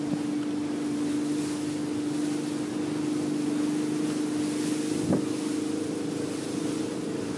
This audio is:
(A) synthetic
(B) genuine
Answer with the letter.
B